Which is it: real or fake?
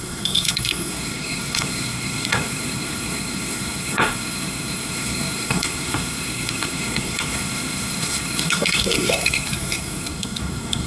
fake